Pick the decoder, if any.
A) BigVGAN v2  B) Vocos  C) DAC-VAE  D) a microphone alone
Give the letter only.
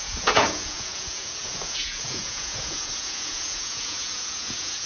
B